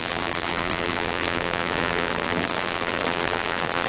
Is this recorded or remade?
remade